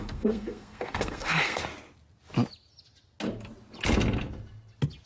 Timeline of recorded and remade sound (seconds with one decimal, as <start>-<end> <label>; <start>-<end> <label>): 0.0-1.6 remade; 1.6-5.1 recorded